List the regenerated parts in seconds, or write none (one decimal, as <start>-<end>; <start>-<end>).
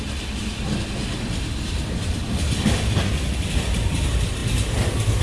none